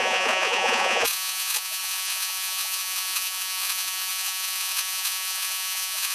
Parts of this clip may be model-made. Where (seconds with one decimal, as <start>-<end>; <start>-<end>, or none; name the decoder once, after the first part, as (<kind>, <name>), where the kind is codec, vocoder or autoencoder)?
0.0-6.1 (vocoder, Vocos)